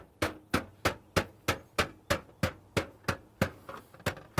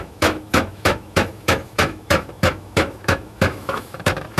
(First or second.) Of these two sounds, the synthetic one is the second